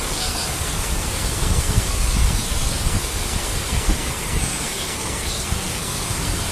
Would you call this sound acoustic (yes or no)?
no